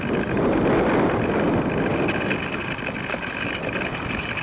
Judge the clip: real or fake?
real